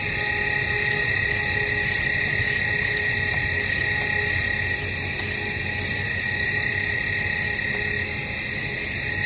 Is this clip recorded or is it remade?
recorded